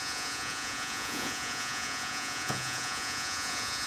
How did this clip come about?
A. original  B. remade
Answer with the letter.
B